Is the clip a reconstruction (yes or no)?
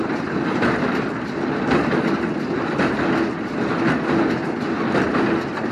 no